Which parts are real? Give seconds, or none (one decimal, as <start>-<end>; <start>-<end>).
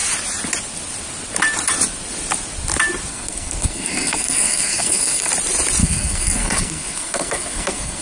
0.0-3.1; 5.3-5.8